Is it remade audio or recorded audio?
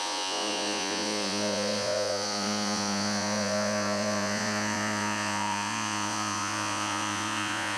remade